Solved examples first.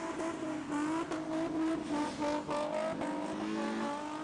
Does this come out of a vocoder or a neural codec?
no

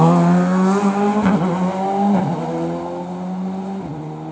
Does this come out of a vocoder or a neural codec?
no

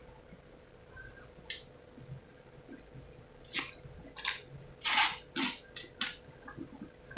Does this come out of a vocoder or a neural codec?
no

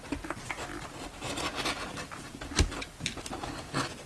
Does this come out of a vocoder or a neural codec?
no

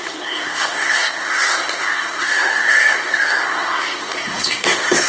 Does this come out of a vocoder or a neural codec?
yes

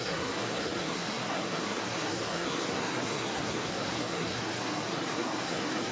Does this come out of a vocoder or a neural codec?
yes